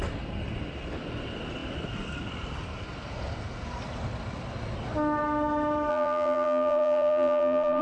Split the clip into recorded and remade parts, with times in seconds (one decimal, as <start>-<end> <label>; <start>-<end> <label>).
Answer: 0.0-5.9 recorded; 5.9-7.8 remade